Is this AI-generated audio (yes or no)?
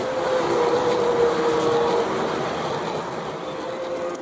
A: no